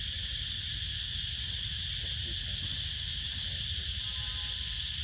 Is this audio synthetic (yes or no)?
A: no